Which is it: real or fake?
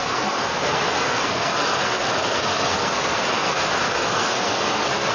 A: fake